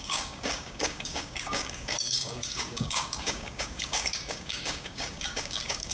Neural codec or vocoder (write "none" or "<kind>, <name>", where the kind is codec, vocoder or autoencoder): codec, DAC